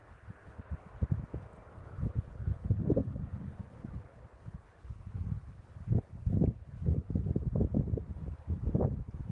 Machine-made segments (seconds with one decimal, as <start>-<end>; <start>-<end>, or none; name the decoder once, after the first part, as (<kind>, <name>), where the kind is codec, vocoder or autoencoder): 0.0-0.9 (codec, HILCodec); 1.8-7.1

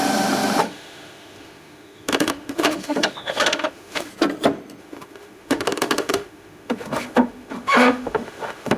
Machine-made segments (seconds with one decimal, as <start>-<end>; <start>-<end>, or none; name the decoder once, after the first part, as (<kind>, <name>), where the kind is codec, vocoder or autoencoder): 0.6-4.1 (autoencoder, DAC-VAE); 4.8-8.8

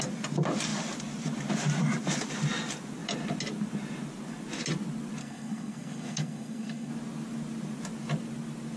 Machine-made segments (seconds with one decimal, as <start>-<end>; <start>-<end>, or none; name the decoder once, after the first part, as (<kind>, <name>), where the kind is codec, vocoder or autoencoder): 5.2-6.9 (codec, SNAC)

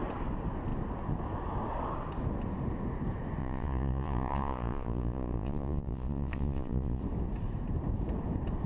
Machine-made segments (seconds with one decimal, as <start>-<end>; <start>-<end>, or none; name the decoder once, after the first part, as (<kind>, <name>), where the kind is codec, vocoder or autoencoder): 3.4-7.0 (vocoder, Vocos)

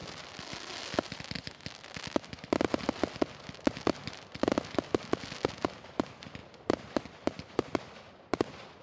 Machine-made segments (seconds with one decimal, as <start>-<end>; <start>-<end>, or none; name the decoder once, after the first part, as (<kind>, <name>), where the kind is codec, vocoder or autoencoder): 4.0-4.6 (vocoder, BigVGAN v2); 6.4-7.0

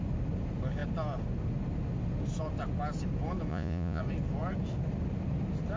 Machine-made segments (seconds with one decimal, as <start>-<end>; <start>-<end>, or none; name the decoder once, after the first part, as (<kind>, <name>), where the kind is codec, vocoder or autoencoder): 3.5-4.0 (vocoder, Vocos)

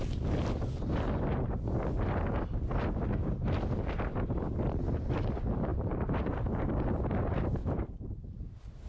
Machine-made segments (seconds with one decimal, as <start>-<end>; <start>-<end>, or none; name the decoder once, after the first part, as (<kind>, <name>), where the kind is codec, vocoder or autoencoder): 5.7-6.7 (vocoder, BigVGAN v2); 7.6-8.9

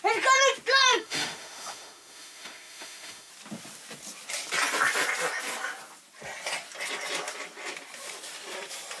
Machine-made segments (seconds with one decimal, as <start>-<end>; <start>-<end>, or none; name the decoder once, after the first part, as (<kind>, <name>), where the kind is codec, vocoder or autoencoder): 0.9-3.3 (autoencoder, DAC-VAE)